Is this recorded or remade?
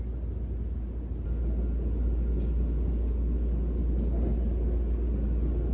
recorded